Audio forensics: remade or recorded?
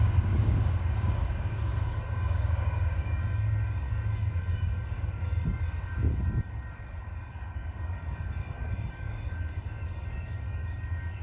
remade